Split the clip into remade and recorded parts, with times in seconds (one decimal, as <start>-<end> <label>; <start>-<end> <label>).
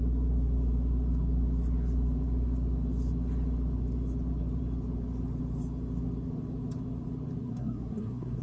0.0-7.4 recorded; 7.4-8.4 remade